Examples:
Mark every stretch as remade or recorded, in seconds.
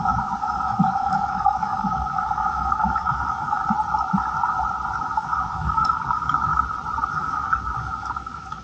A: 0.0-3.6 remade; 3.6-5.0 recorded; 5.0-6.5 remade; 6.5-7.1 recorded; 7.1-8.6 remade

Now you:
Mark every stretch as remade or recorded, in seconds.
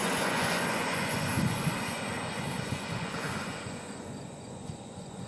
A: 0.0-5.3 remade